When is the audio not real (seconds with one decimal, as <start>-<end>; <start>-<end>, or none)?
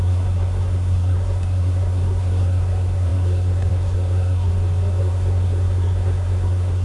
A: 0.0-4.5; 5.0-6.8